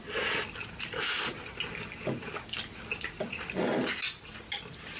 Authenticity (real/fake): real